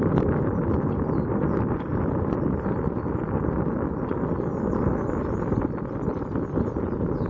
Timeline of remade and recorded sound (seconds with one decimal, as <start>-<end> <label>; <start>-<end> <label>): 0.0-1.9 remade; 1.9-5.6 recorded; 5.6-7.3 remade